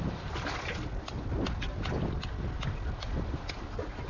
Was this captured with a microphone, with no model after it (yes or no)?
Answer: yes